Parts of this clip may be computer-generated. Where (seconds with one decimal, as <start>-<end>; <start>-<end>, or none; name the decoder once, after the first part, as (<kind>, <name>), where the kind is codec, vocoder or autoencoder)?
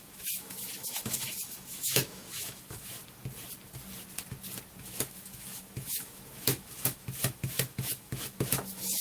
0.0-3.0 (autoencoder, DAC-VAE); 4.8-9.0